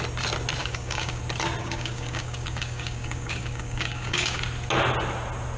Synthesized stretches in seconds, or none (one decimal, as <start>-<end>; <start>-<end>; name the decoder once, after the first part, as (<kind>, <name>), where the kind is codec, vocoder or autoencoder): 0.6-1.2 (codec, DAC); 1.6-4.4